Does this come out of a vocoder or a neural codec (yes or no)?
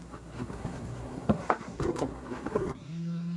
yes